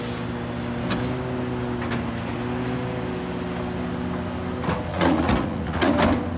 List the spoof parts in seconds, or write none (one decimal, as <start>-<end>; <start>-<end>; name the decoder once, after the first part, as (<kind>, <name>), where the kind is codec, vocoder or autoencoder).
4.9-5.9 (vocoder, Vocos)